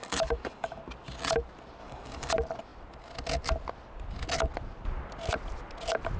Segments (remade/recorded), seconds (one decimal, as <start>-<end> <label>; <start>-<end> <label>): 0.0-0.8 remade; 0.8-1.8 recorded; 1.8-2.3 remade; 2.3-6.2 recorded